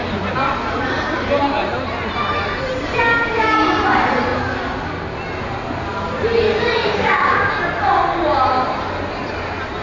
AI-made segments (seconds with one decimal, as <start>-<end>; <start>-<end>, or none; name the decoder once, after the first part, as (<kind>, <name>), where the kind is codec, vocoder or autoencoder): 6.8-7.5 (codec, DAC)